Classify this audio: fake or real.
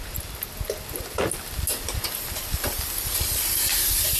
real